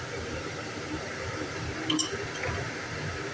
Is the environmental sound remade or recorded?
remade